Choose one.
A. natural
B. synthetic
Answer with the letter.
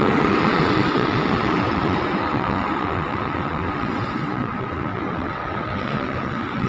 B